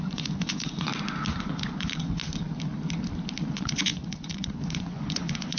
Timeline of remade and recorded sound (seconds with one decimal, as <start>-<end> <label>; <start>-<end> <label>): 0.0-0.9 remade; 0.9-1.4 recorded; 1.4-2.2 remade; 2.2-3.5 recorded; 3.5-5.6 remade